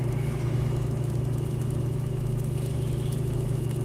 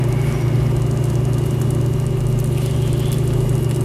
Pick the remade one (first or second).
first